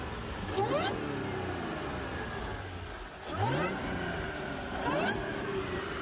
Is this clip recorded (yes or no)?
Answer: yes